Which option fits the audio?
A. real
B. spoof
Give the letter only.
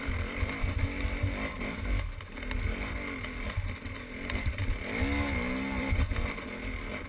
A